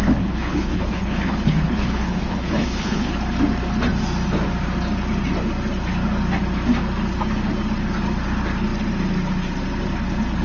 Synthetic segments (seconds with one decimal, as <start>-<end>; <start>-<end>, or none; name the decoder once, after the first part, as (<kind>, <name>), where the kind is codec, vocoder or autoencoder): 0.0-3.1 (codec, HILCodec)